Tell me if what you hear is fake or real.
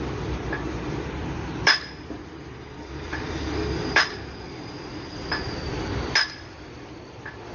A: fake